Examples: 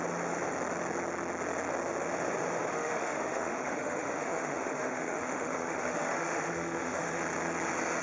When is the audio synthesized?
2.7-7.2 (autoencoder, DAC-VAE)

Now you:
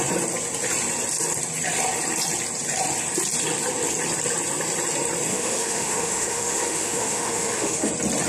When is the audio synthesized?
5.3-7.9 (autoencoder, DAC-VAE)

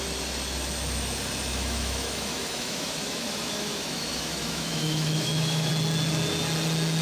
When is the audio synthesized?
1.5-5.7 (autoencoder, DAC-VAE)

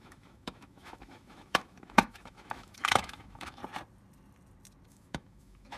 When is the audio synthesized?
0.0-3.6 (autoencoder, DAC-VAE); 4.9-5.8

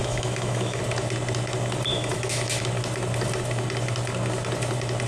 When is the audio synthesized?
0.0-0.8 (autoencoder, DAC-VAE); 1.9-2.6

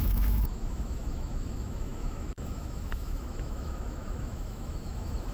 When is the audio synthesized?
0.0-5.3 (autoencoder, DAC-VAE)